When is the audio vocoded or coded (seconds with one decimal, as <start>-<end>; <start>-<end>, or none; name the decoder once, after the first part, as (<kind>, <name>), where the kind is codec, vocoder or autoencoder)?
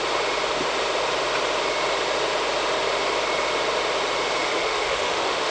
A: 4.4-5.5 (autoencoder, DAC-VAE)